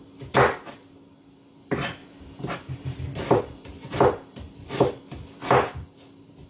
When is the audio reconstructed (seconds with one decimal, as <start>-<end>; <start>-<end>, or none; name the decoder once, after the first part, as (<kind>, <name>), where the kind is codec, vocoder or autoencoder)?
2.0-5.0 (vocoder, BigVGAN v2)